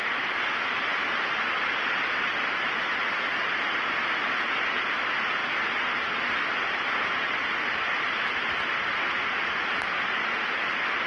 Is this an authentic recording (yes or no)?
yes